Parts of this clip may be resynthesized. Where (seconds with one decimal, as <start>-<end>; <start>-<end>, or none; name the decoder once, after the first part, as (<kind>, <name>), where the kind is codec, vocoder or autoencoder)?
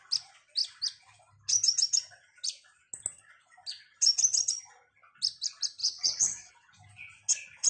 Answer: 5.8-6.5 (vocoder, WaveNeXt)